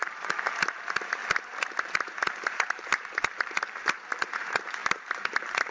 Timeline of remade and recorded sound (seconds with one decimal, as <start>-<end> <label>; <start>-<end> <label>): 0.0-1.2 remade; 1.2-1.7 recorded; 1.7-5.7 remade